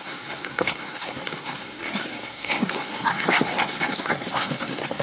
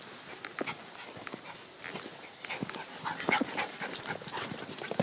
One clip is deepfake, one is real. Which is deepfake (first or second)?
first